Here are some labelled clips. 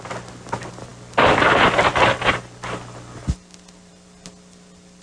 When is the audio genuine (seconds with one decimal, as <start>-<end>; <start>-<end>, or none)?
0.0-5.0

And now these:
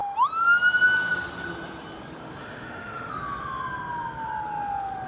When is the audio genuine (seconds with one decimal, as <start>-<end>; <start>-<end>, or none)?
0.0-2.4; 3.1-5.1

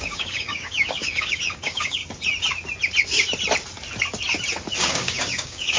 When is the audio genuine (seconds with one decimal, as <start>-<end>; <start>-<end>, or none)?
2.0-4.8

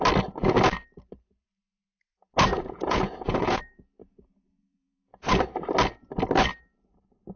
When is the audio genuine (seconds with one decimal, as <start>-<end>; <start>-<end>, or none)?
0.0-2.5; 3.6-4.0; 5.3-7.4

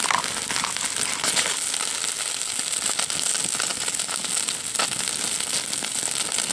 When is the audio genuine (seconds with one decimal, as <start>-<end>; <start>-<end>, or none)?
0.0-6.5

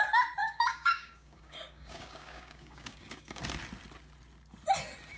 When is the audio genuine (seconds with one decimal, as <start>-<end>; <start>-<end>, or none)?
0.0-0.4; 3.4-5.2

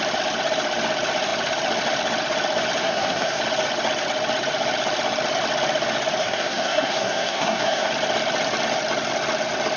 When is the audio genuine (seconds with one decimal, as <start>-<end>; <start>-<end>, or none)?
0.0-2.8; 3.4-6.2; 7.9-9.8